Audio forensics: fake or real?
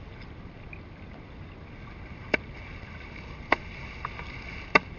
real